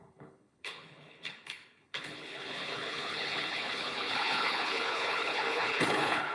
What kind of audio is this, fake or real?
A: fake